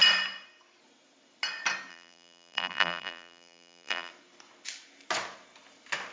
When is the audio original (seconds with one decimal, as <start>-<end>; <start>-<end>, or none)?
0.0-1.9; 4.1-6.1